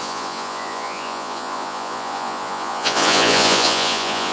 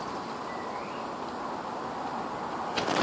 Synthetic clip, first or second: first